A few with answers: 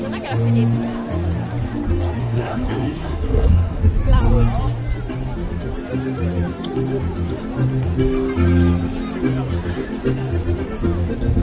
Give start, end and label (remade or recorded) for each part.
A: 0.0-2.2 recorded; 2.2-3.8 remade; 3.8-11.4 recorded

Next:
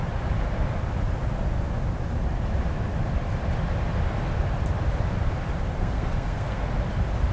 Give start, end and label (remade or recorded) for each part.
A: 0.0-5.8 recorded; 5.8-6.7 remade; 6.7-7.3 recorded

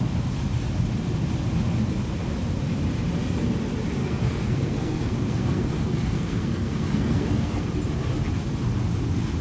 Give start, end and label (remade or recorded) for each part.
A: 0.0-4.0 recorded; 4.0-7.7 remade; 7.7-9.4 recorded

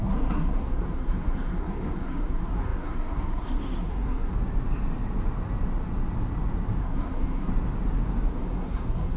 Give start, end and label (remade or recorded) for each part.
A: 0.0-4.3 remade; 4.3-6.8 recorded; 6.8-7.5 remade; 7.5-8.3 recorded; 8.3-9.2 remade

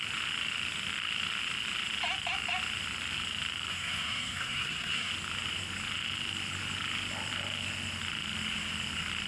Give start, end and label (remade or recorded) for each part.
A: 0.0-3.7 recorded; 3.7-5.1 remade; 5.1-9.3 recorded

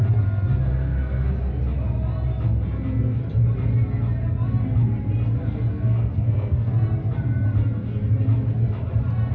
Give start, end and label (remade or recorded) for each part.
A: 0.0-0.7 recorded; 0.7-1.3 remade; 1.3-5.7 recorded; 5.7-6.7 remade; 6.7-9.3 recorded

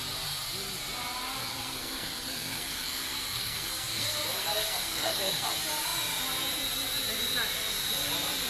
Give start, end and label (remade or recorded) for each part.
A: 0.0-1.4 recorded; 1.4-5.5 remade; 5.5-8.5 recorded